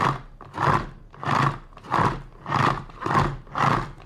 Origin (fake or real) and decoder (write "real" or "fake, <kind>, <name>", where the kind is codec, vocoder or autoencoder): real